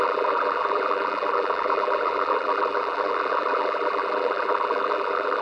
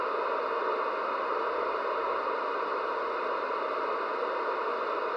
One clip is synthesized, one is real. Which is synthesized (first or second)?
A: first